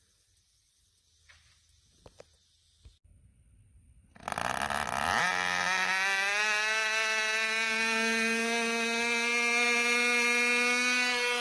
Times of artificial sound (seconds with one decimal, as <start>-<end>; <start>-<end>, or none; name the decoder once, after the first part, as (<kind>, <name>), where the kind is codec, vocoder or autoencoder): none